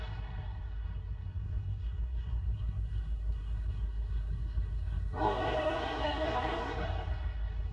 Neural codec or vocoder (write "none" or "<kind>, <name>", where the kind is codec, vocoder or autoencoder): codec, SNAC